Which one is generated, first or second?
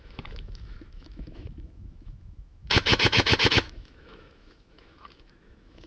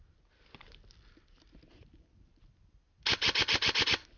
first